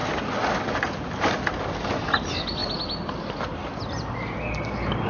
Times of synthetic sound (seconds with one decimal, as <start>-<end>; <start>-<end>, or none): none